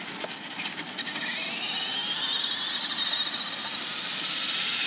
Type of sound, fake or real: real